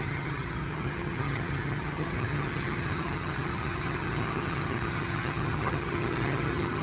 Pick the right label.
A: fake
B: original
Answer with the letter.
A